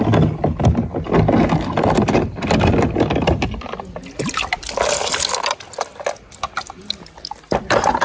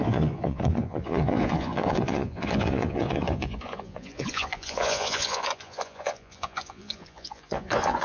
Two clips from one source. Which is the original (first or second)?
first